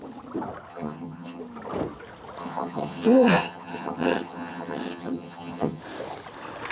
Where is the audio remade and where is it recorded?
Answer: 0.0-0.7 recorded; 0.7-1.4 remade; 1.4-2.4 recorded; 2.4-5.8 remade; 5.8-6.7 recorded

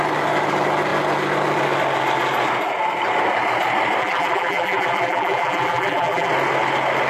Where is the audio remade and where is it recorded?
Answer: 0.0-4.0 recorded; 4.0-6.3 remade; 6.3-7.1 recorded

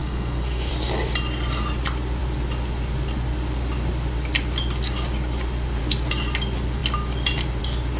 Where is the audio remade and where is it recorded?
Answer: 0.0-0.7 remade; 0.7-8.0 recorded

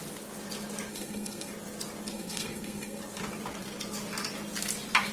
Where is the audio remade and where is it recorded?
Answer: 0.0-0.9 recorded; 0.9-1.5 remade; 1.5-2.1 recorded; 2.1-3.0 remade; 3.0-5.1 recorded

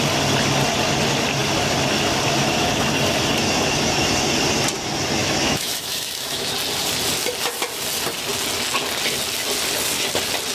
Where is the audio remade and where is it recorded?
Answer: 0.0-5.2 recorded; 5.2-6.5 remade; 6.5-10.5 recorded

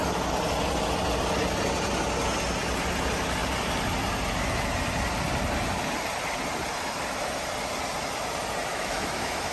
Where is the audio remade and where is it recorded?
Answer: 0.0-8.7 recorded; 8.7-9.5 remade